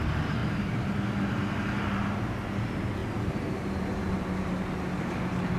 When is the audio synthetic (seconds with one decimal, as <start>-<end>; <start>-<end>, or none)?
none